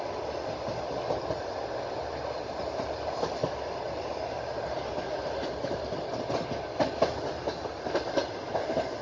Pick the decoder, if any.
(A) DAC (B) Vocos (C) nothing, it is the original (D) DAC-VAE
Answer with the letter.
C